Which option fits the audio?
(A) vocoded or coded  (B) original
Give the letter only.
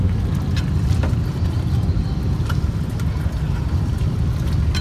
B